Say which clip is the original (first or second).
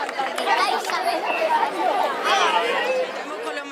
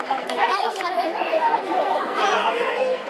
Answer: first